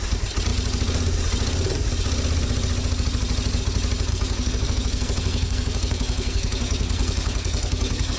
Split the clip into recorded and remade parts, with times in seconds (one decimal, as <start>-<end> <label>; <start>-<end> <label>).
0.0-4.1 recorded; 4.1-8.2 remade